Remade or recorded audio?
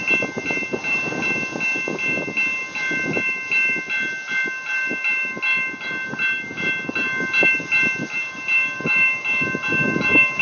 recorded